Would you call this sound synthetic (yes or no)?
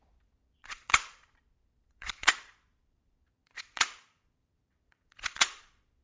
yes